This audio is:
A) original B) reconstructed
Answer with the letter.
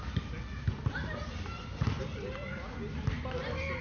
A